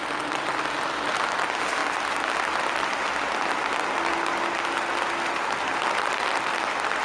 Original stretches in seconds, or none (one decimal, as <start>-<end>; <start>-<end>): 0.0-7.0